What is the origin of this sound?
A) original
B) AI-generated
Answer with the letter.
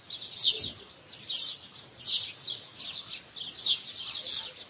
A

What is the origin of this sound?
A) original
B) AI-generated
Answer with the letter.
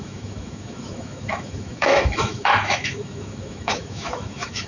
B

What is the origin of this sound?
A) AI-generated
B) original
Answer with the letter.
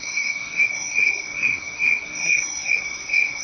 A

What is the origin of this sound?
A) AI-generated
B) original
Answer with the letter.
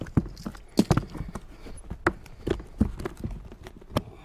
B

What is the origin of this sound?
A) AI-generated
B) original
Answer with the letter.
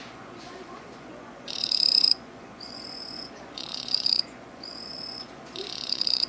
A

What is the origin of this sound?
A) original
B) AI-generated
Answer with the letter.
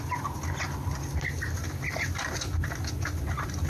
A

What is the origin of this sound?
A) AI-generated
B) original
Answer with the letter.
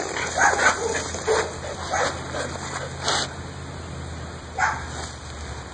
B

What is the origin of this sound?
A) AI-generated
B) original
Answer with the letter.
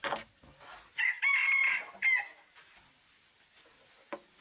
B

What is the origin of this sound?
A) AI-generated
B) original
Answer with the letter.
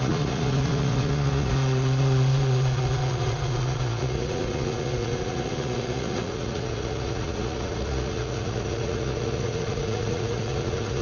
A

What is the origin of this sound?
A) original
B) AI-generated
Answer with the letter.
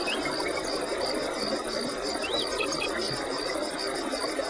A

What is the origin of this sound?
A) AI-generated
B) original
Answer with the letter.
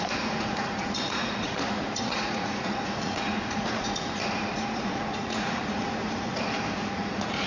A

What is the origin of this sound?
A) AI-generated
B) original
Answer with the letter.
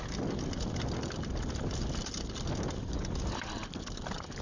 B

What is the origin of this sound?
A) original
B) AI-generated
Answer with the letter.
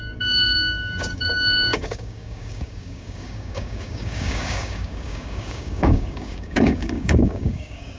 B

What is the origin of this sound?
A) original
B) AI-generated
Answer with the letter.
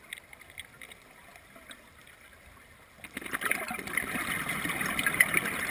A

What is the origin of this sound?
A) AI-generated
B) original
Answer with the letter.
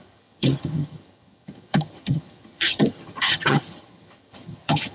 A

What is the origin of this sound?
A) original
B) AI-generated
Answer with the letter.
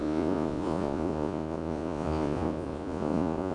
B